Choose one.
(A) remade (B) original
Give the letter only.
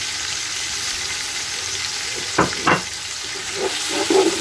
A